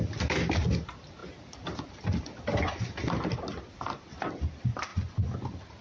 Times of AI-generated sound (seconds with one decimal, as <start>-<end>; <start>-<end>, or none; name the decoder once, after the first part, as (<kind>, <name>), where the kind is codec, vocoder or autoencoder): none